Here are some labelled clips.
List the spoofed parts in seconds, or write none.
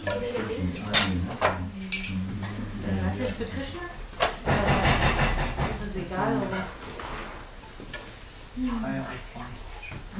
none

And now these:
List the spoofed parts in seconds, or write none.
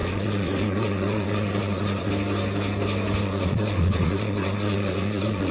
0.0-2.1 (vocoder, Vocos); 3.2-5.5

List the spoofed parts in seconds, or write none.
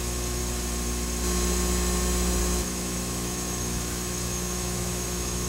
0.0-0.4 (autoencoder, DAC-VAE); 2.4-5.5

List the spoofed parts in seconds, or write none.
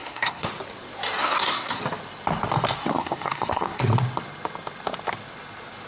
0.0-0.5 (codec, SNAC); 1.2-1.8; 2.8-3.8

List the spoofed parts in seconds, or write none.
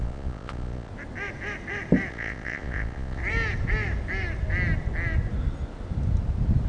0.0-0.9 (vocoder, Vocos); 2.1-3.2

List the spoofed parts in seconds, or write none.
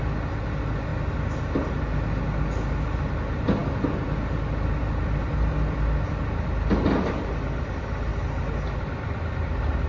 none